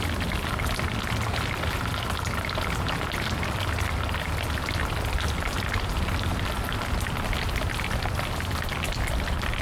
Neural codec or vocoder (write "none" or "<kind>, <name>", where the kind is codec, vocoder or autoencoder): none